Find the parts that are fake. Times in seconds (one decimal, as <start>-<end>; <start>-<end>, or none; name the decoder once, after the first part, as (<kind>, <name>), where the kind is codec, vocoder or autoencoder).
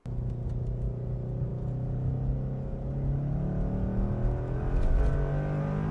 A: none